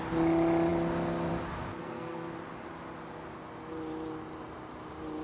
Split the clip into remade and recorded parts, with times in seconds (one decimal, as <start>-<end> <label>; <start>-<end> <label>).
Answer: 0.0-1.8 recorded; 1.8-2.3 remade; 2.3-5.2 recorded